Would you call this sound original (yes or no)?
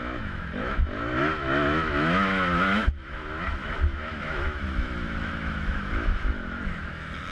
no